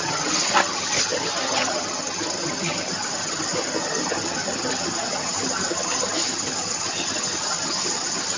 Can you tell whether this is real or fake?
fake